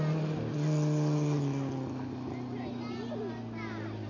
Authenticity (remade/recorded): recorded